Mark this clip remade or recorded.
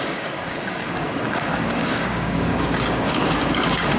remade